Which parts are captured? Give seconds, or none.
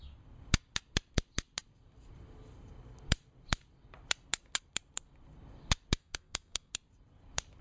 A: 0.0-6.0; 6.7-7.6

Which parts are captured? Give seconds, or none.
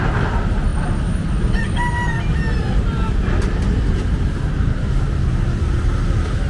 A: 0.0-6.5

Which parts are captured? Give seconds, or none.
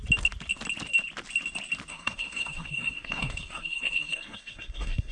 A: 0.0-1.9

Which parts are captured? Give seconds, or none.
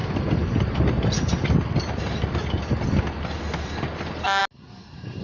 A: 0.0-5.2